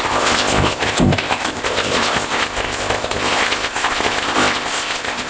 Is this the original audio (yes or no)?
no